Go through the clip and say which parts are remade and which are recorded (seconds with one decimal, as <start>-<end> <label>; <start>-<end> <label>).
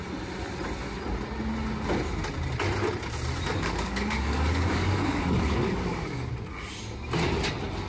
0.0-3.5 recorded; 3.5-6.3 remade; 6.3-7.9 recorded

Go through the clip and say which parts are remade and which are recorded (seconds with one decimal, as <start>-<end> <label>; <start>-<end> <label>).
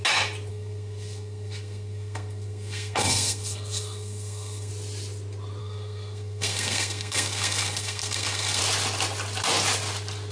0.0-0.5 recorded; 0.5-4.7 remade; 4.7-5.6 recorded; 5.6-8.6 remade; 8.6-10.3 recorded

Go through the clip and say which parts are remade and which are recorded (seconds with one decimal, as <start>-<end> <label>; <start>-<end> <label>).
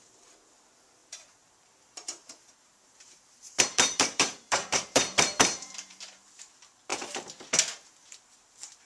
0.0-1.0 recorded; 1.0-6.0 remade; 6.0-8.9 recorded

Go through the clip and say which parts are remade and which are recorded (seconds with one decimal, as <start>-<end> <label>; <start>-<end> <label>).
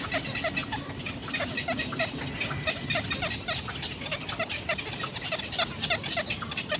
0.0-6.8 recorded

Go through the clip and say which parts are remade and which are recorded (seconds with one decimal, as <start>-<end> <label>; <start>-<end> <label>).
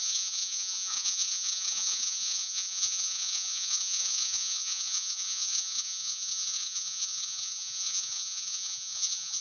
0.0-9.4 remade